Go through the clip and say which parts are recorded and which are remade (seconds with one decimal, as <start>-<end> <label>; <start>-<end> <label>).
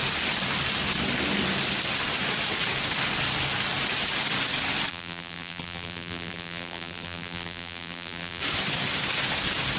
0.0-4.9 recorded; 4.9-8.4 remade; 8.4-9.8 recorded